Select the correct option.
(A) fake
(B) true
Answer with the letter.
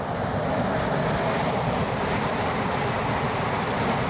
B